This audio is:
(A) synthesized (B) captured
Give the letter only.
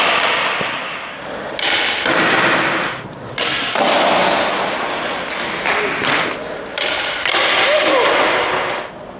B